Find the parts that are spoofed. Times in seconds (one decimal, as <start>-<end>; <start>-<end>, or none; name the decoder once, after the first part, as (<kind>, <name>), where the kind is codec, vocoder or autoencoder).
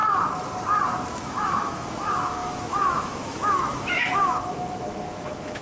1.1-5.6 (autoencoder, DAC-VAE)